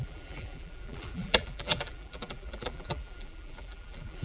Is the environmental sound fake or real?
fake